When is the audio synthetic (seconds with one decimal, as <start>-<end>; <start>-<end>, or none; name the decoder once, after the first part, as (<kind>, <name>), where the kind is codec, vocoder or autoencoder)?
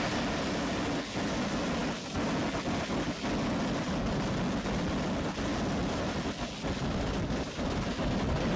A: none